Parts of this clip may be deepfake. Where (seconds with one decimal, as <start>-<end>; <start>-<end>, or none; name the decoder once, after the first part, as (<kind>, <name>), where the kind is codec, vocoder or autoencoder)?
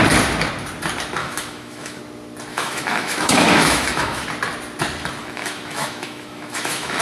1.2-2.0 (autoencoder, DAC-VAE); 2.5-4.3; 5.2-7.0